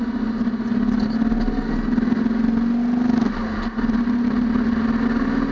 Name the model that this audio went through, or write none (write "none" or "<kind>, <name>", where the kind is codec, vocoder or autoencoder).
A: none